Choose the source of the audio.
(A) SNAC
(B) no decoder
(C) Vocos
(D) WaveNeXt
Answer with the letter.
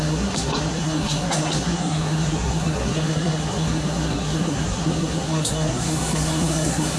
A